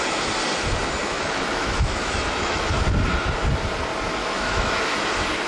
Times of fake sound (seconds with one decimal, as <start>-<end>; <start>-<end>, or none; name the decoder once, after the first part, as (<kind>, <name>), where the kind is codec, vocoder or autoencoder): 1.0-2.6 (autoencoder, DAC-VAE); 4.2-4.8